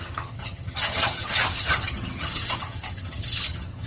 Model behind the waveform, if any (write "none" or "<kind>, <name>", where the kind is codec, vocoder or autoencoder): vocoder, HiFi-GAN